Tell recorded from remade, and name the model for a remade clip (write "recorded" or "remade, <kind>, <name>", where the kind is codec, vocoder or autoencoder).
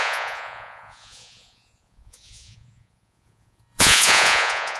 remade, vocoder, Vocos